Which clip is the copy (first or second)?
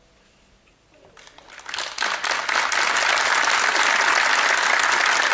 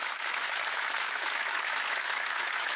second